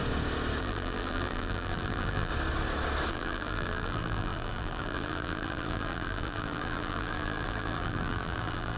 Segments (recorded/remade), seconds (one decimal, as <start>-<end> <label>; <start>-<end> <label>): 0.0-0.6 recorded; 0.6-2.3 remade; 2.3-3.1 recorded; 3.1-8.8 remade